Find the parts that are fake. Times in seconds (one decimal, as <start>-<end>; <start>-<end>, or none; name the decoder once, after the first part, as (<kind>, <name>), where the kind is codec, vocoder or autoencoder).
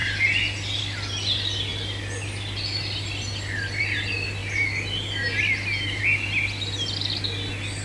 none